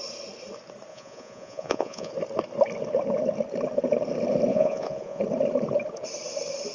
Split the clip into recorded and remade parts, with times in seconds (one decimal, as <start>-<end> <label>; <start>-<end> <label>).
0.0-0.9 recorded; 0.9-2.1 remade; 2.1-4.5 recorded; 4.5-5.2 remade; 5.2-6.7 recorded